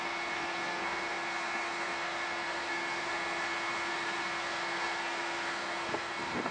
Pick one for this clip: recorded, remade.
remade